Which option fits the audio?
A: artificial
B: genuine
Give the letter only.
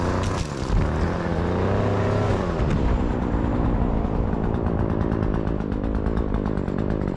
B